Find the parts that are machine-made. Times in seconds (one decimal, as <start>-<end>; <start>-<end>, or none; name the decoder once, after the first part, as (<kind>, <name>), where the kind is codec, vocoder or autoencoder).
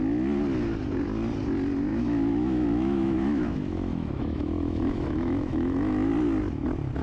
1.9-6.1 (autoencoder, DAC-VAE)